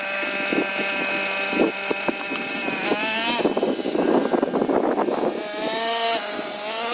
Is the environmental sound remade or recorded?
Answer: recorded